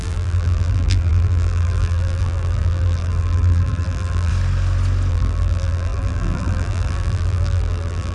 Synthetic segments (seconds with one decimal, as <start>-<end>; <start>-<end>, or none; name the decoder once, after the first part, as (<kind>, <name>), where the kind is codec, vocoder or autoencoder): 0.0-4.3 (vocoder, BigVGAN v2); 5.1-8.1